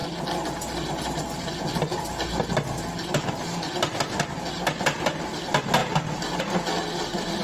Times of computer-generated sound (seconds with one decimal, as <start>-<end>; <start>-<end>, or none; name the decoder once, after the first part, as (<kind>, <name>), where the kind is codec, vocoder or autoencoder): 5.8-6.4 (vocoder, BigVGAN v2)